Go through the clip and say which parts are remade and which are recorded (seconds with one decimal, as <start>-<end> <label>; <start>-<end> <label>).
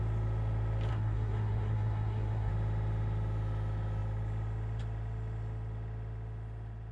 0.0-0.9 recorded; 0.9-2.5 remade; 2.5-6.9 recorded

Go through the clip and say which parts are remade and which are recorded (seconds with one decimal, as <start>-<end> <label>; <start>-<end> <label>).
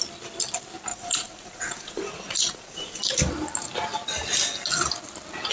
0.0-0.9 recorded; 0.9-3.0 remade; 3.0-5.5 recorded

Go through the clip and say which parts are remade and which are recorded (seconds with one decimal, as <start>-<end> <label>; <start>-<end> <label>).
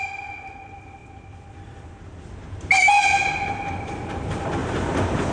0.0-4.6 recorded; 4.6-5.3 remade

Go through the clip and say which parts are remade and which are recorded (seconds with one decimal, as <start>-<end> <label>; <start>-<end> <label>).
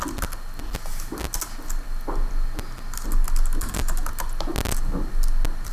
0.0-5.7 recorded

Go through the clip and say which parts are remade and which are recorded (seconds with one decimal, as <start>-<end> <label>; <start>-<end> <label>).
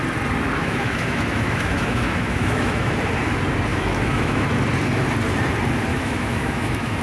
0.0-0.6 recorded; 0.6-2.9 remade; 2.9-3.7 recorded; 3.7-4.4 remade; 4.4-5.9 recorded; 5.9-7.0 remade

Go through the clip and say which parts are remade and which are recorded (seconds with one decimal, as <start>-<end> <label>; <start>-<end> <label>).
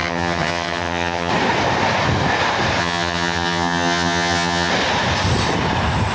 0.0-1.3 remade; 1.3-2.8 recorded; 2.8-4.7 remade; 4.7-6.1 recorded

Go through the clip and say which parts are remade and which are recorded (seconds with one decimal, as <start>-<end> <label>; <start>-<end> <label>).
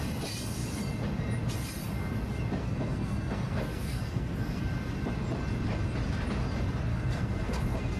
0.0-2.6 recorded; 2.6-4.6 remade; 4.6-6.9 recorded; 6.9-8.0 remade